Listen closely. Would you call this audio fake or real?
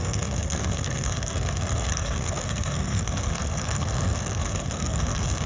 fake